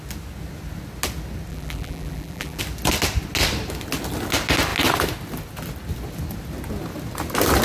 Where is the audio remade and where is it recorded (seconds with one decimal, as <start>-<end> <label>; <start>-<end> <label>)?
0.0-1.5 recorded; 1.5-2.6 remade; 2.6-7.6 recorded